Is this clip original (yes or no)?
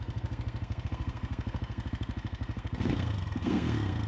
no